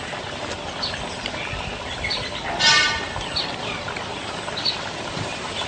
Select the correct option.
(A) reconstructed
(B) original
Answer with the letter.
B